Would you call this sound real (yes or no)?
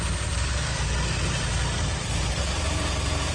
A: no